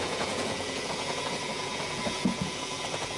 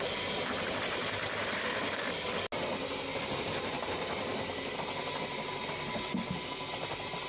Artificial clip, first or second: first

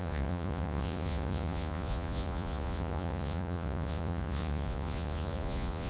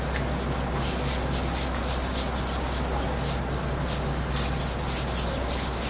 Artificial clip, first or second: first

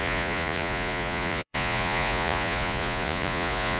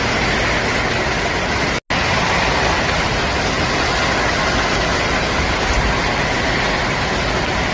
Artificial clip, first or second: first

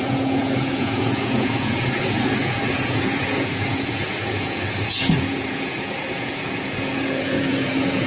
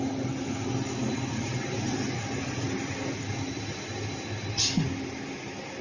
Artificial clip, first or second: first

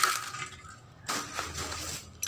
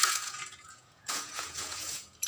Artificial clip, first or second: second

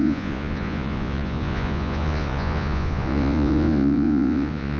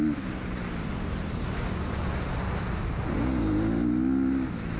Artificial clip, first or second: first